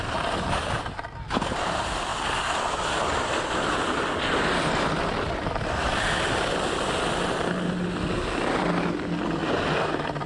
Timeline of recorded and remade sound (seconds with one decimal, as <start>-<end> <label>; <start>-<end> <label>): 0.0-10.3 recorded